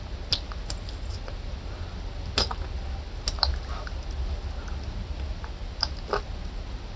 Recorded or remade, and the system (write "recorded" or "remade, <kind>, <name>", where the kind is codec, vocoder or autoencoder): recorded